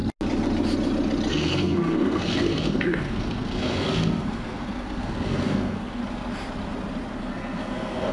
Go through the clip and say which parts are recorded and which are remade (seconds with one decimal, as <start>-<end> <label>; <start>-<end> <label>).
0.0-1.3 recorded; 1.3-6.0 remade; 6.0-7.2 recorded; 7.2-8.1 remade